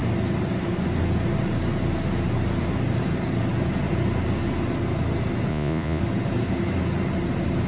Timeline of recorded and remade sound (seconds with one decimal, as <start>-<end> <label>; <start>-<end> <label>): 0.0-5.5 recorded; 5.5-6.0 remade; 6.0-7.7 recorded